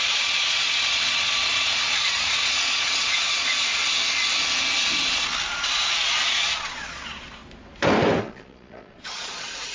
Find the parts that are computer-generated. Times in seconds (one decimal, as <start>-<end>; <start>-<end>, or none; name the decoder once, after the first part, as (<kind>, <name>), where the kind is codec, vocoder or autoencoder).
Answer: 0.0-3.8 (vocoder, Vocos); 5.5-7.4; 8.2-9.7